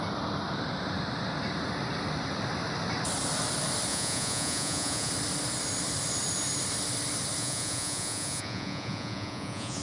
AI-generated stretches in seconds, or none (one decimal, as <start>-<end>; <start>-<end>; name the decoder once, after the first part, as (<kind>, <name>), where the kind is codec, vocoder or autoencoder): 3.9-5.1 (vocoder, Vocos); 7.4-9.8